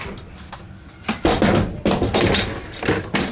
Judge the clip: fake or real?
real